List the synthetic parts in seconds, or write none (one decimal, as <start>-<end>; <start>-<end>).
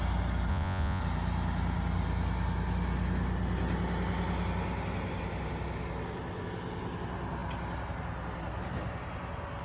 0.5-1.0